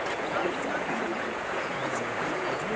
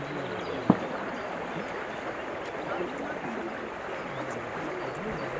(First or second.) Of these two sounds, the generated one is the first